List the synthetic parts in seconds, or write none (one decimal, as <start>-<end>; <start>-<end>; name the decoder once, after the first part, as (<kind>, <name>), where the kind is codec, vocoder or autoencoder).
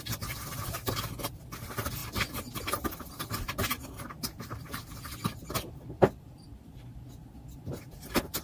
0.4-1.4 (vocoder, BigVGAN v2); 2.0-5.7